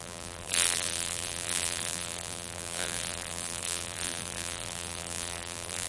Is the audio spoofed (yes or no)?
yes